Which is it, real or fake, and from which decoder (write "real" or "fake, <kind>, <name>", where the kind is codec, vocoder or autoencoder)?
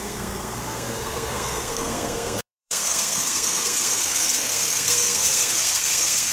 fake, codec, SNAC